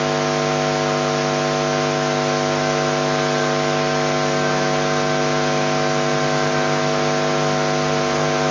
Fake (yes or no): no